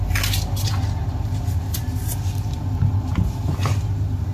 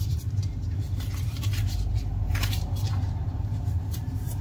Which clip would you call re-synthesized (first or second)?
second